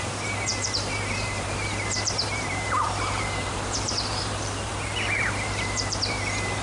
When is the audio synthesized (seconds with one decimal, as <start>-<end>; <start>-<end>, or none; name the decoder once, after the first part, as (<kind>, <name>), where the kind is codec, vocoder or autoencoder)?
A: 0.0-4.7 (vocoder, BigVGAN v2); 5.2-6.6